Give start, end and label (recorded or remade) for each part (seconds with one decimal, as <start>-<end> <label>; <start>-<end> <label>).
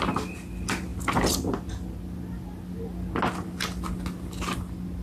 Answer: 0.0-5.0 recorded